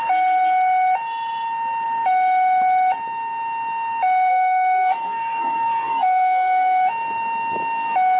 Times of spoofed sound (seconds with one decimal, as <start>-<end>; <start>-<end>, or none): 4.3-6.9